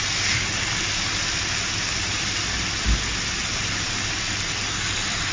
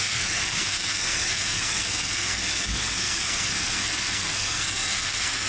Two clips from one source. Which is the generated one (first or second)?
second